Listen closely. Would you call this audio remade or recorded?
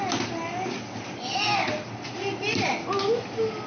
recorded